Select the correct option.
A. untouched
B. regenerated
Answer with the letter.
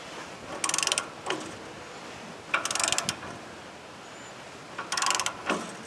A